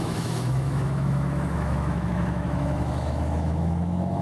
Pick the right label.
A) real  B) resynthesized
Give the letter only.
B